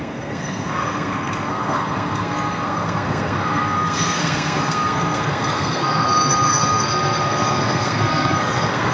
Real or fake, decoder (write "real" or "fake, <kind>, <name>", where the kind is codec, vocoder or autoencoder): fake, codec, SNAC